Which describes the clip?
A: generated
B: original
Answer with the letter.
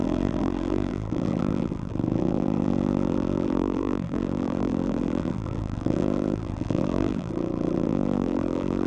A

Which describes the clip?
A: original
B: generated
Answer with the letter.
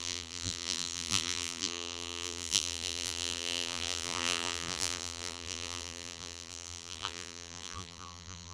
B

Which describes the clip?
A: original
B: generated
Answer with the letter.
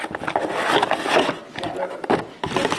B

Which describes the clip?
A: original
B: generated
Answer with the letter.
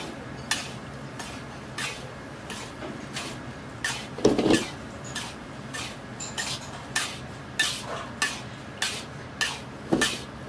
A